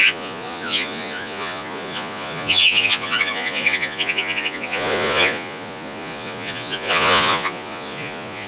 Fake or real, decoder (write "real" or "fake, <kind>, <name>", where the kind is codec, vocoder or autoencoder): fake, vocoder, Vocos